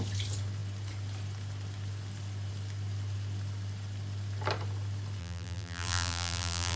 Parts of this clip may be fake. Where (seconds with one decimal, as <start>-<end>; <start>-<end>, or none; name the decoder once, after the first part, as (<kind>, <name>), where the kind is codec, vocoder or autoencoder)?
5.2-6.8 (vocoder, BigVGAN v2)

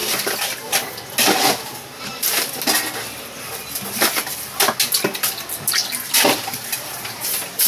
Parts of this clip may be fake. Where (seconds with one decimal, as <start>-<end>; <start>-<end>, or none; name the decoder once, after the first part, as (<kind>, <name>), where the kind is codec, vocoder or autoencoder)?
none